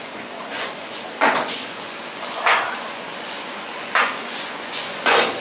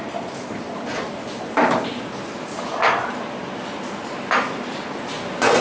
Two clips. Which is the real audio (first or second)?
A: second